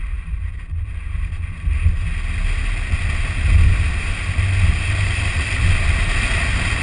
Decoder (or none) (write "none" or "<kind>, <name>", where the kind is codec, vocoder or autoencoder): none